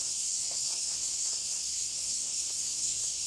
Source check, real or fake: fake